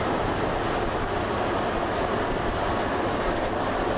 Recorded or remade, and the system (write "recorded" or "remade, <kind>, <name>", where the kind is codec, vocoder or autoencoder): recorded